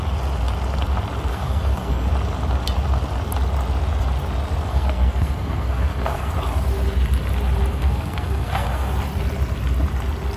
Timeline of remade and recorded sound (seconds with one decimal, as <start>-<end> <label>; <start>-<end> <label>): 0.0-1.3 recorded; 1.3-2.1 remade; 2.1-4.7 recorded; 4.7-6.3 remade; 6.3-7.7 recorded; 7.7-8.9 remade; 8.9-10.4 recorded